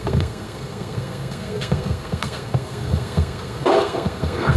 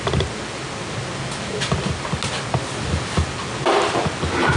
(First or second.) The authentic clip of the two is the second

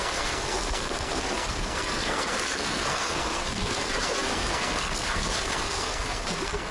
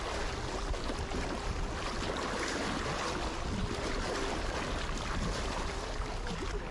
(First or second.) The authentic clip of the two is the second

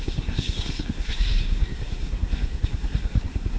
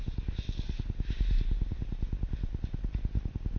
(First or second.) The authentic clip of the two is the second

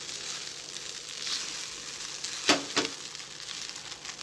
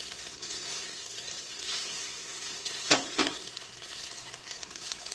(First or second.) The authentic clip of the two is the first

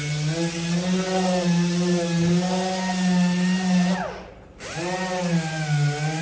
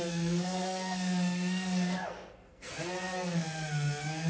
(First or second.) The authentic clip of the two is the first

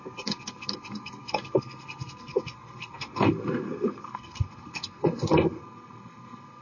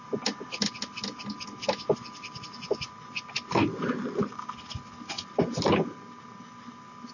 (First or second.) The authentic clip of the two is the second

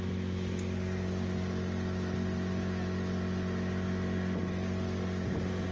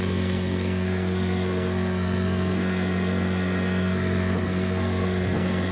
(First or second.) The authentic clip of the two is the first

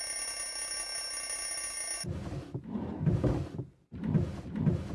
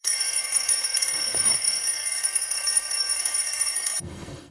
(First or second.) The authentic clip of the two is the first